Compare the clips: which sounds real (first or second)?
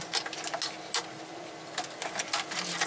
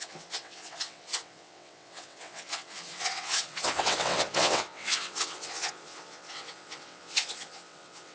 first